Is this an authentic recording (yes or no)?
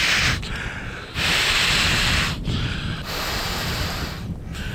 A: yes